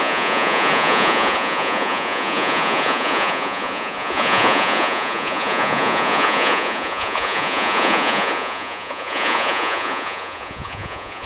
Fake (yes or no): yes